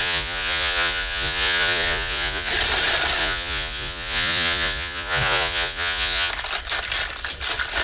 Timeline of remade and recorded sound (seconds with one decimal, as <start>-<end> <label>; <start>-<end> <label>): 0.0-2.5 remade; 2.5-3.2 recorded; 3.2-6.3 remade; 6.3-7.8 recorded